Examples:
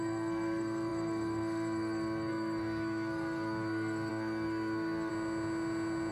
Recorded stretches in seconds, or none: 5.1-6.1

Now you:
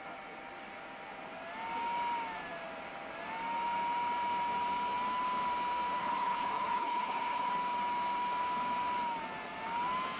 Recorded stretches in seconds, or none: 0.0-6.0; 7.5-10.2

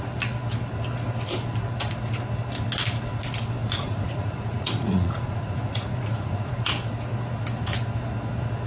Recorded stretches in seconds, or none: 0.0-3.6; 6.7-8.7

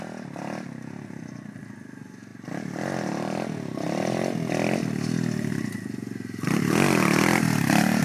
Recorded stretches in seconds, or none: 0.0-8.0

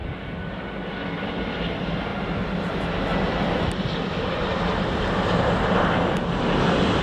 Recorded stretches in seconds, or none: 0.0-7.0

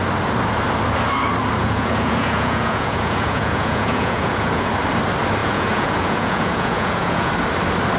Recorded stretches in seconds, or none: 0.0-1.6; 4.7-5.4; 7.3-8.0